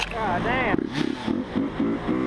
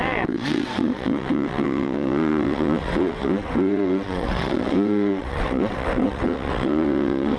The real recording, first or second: first